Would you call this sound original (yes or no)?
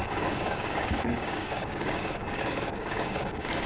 no